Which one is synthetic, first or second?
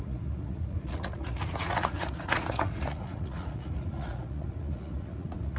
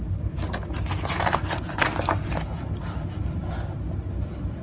first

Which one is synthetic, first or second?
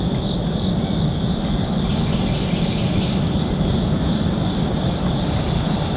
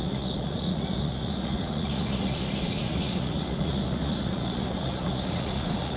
second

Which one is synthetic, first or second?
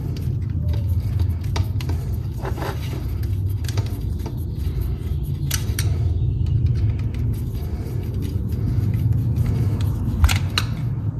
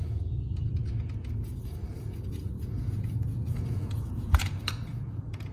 second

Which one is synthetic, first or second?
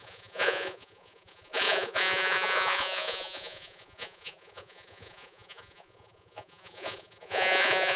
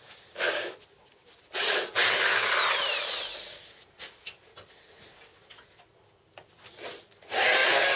first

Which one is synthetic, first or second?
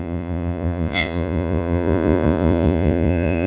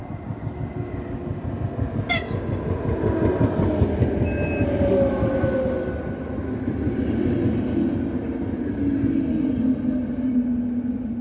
first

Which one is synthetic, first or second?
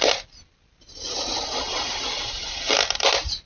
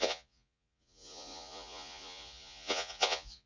second